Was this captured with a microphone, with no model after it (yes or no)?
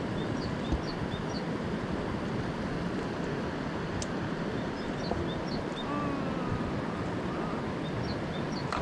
yes